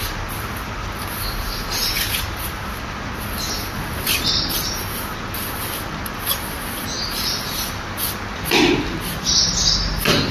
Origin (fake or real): real